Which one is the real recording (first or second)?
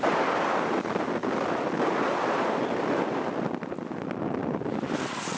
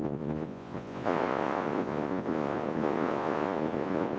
first